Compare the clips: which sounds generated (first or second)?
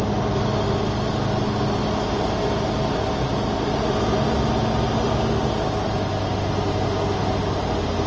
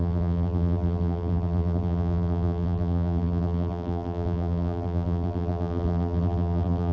second